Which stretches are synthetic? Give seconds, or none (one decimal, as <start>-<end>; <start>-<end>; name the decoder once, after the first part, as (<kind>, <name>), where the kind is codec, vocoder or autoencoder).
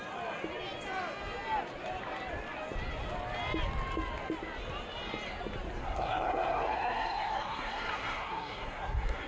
5.8-9.3 (codec, SNAC)